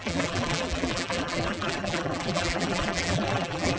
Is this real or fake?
fake